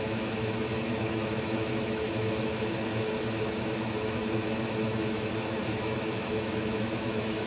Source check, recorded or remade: remade